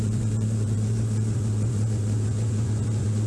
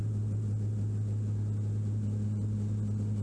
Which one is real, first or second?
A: second